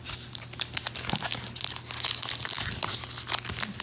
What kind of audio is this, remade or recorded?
recorded